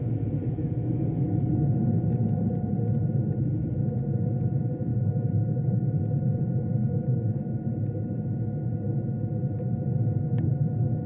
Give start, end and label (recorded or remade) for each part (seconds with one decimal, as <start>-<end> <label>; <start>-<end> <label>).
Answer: 0.0-0.4 recorded; 0.4-1.5 remade; 1.5-4.9 recorded; 4.9-6.0 remade; 6.0-6.8 recorded; 6.8-7.4 remade; 7.4-11.1 recorded